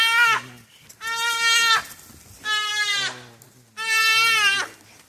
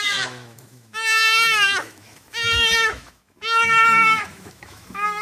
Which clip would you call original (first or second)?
first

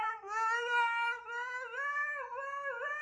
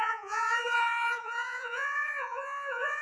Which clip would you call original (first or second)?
first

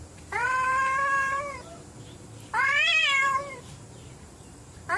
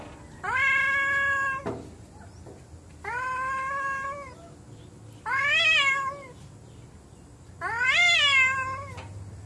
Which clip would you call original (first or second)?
second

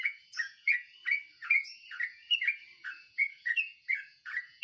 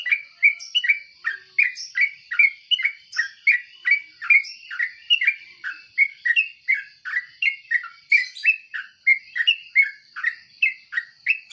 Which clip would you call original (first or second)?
second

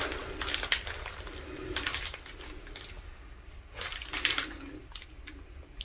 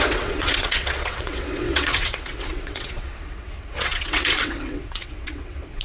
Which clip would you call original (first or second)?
first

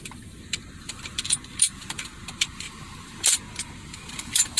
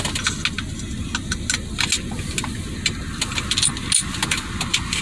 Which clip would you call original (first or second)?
second